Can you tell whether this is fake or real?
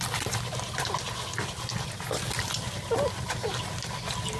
real